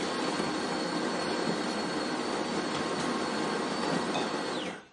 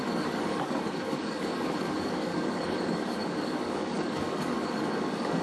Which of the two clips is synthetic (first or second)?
second